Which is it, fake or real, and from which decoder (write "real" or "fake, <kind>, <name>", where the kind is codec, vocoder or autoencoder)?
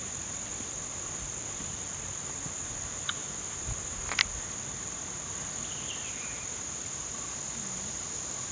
real